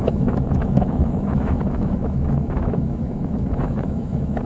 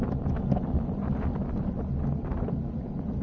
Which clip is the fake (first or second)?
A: first